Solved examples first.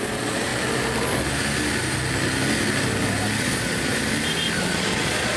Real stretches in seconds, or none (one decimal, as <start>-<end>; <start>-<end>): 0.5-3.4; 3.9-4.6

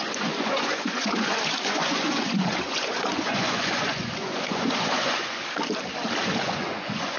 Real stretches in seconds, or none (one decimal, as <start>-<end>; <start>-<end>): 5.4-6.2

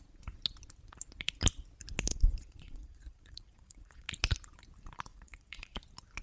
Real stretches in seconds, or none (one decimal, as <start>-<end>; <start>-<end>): 0.0-2.1; 4.1-5.1; 5.8-6.2